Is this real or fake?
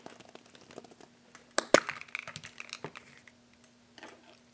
real